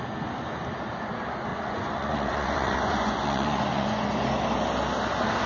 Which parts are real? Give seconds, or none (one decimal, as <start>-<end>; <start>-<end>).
0.0-1.5; 4.1-5.5